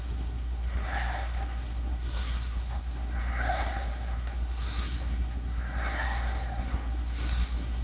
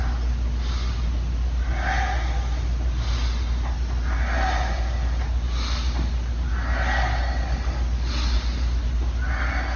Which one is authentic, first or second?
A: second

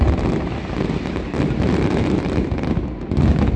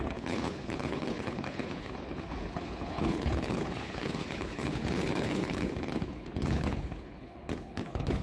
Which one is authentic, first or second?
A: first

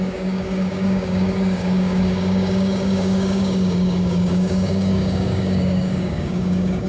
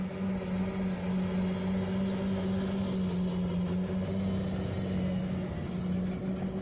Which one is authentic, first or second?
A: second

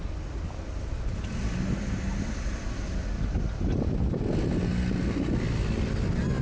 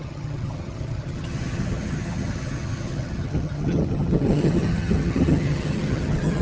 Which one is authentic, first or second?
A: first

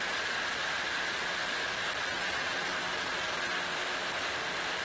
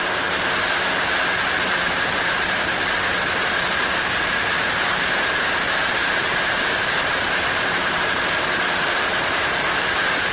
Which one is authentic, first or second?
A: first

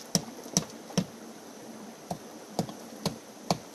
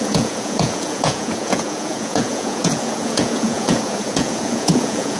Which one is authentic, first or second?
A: first